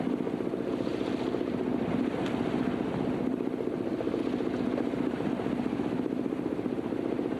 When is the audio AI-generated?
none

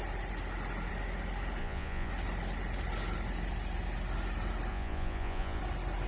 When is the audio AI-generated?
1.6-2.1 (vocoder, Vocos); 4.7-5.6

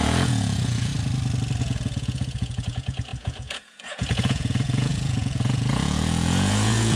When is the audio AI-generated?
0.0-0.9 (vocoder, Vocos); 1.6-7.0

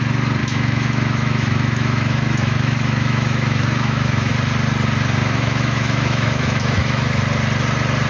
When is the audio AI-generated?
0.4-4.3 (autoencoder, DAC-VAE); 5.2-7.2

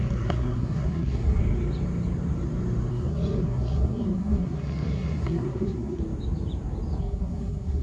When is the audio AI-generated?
0.0-1.4 (codec, SNAC); 2.9-6.0; 7.0-7.8